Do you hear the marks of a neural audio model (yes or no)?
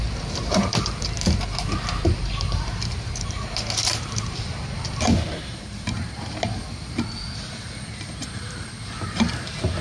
yes